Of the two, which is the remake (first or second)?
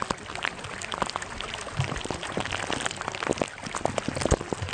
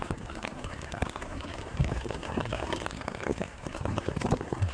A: second